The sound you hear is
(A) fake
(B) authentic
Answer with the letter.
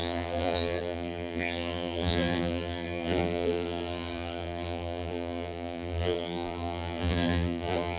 A